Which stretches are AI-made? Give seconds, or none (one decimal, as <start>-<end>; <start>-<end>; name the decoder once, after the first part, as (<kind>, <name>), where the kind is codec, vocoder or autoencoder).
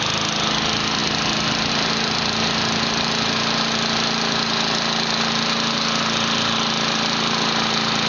none